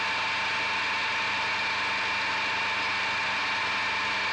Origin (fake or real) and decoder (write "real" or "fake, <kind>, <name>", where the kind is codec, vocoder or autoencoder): real